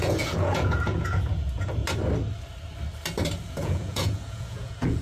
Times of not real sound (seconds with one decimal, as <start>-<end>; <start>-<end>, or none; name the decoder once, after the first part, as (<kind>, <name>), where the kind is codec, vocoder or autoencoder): 0.0-1.8 (vocoder, Vocos); 3.5-5.0